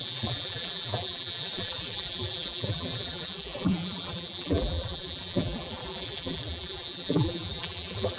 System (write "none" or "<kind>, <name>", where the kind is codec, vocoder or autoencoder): vocoder, BigVGAN v2